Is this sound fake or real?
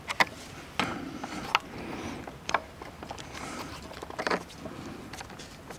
real